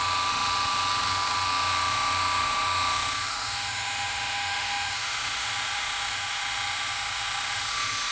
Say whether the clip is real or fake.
fake